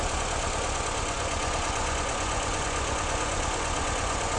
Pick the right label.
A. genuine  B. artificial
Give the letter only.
B